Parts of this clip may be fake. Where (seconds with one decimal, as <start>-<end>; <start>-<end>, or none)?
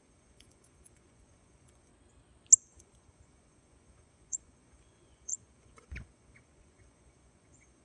0.0-1.9; 2.6-7.8